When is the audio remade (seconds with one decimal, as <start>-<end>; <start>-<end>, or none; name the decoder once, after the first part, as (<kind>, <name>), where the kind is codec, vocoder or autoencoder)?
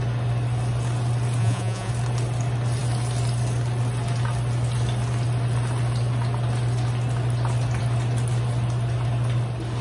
1.4-1.9 (vocoder, Vocos)